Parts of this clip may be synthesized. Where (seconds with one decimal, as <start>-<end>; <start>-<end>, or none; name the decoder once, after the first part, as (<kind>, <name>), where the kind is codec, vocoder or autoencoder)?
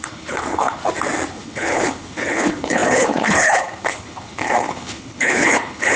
0.0-0.8 (codec, HILCodec); 1.3-6.0